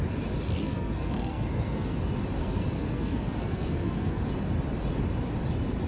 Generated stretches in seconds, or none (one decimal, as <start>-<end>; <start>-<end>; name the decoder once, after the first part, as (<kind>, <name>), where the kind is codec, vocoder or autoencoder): 0.6-2.0 (codec, SNAC); 2.4-4.2